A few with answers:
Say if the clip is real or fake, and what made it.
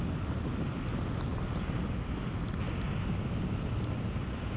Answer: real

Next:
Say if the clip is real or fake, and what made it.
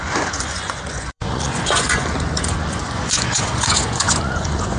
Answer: fake, vocoder, Vocos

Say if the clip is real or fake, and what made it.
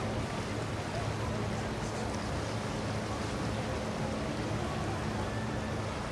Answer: real